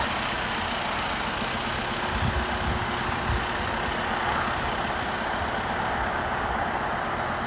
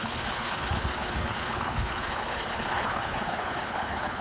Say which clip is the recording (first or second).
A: first